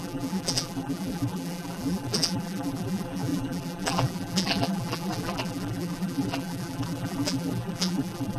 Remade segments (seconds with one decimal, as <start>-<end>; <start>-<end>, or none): 0.0-8.4